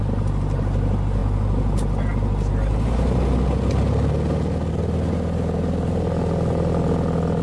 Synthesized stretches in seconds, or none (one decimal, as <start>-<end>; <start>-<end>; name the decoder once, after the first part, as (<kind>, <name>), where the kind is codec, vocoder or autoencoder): none

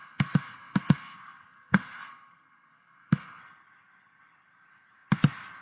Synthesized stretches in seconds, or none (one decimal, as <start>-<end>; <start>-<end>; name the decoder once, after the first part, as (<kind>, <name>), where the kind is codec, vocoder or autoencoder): 0.0-3.4 (codec, SNAC)

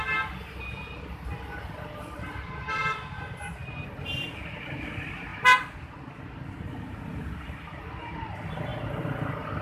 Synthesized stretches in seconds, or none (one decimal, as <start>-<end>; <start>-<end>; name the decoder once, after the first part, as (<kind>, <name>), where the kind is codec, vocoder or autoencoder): none

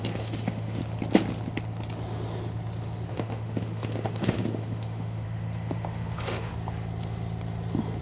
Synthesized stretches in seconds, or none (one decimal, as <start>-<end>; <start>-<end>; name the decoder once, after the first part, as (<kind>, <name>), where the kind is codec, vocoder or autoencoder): 0.0-0.8 (autoencoder, DAC-VAE); 3.1-6.5

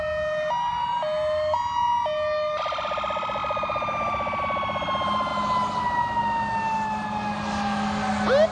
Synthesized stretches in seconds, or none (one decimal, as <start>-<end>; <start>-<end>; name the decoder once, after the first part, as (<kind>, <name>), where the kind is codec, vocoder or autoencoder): none

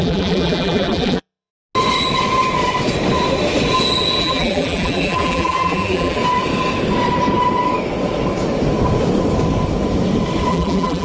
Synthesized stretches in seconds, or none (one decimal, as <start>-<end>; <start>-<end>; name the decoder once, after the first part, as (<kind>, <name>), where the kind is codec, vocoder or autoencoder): 0.0-1.5 (vocoder, BigVGAN v2); 4.2-6.2; 10.5-11.0